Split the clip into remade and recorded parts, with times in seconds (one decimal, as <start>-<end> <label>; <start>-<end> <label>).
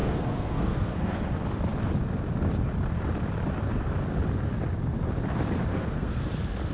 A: 0.0-1.2 remade; 1.2-5.7 recorded; 5.7-6.2 remade; 6.2-6.7 recorded